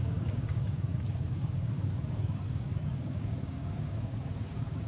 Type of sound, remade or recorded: remade